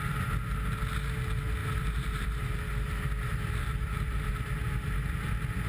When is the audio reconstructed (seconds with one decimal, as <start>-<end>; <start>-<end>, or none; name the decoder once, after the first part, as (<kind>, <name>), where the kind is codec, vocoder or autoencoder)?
1.6-2.4 (vocoder, BigVGAN v2); 3.6-4.3